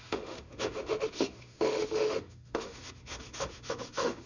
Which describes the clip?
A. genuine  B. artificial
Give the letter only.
B